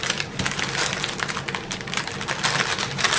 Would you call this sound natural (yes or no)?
yes